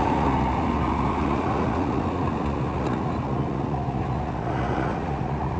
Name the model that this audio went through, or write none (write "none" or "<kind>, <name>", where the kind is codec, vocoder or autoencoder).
vocoder, Vocos